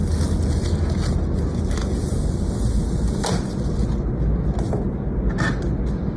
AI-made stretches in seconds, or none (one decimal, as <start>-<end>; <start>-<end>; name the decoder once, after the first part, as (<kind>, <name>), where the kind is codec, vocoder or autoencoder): none